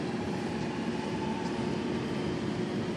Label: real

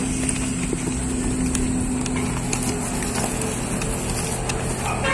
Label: real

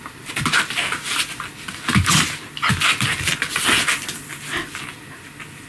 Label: real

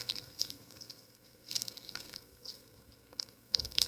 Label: fake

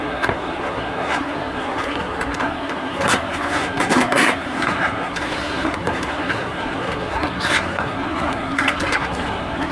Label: fake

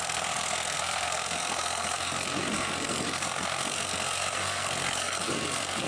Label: fake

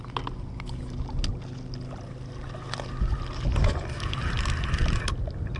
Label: real